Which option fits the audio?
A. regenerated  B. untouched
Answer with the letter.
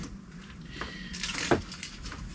B